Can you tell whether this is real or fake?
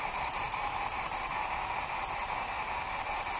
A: real